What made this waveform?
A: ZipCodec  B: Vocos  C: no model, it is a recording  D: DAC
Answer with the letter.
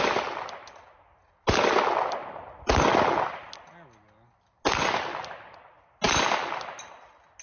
C